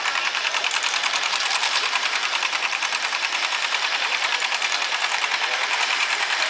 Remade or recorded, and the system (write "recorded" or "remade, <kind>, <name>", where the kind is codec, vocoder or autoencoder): remade, vocoder, BigVGAN v2